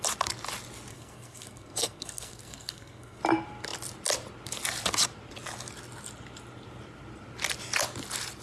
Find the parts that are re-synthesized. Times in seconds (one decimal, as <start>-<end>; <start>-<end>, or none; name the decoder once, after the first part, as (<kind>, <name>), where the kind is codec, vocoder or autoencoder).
0.9-3.2 (codec, SNAC)